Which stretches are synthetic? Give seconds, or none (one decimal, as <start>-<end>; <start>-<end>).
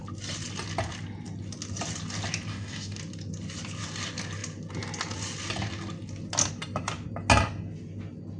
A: 2.5-3.0